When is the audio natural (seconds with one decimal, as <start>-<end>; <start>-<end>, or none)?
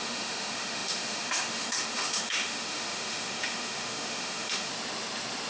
4.7-5.5